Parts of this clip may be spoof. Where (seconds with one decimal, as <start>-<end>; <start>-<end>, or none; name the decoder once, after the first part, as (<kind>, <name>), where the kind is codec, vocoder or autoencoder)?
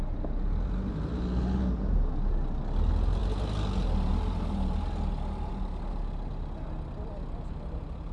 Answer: none